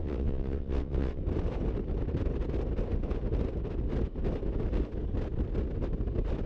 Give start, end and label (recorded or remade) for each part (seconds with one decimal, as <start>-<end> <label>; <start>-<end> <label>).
0.0-1.2 remade; 1.2-6.5 recorded